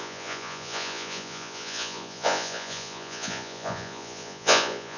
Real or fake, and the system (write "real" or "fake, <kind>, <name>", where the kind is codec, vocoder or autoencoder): fake, vocoder, Vocos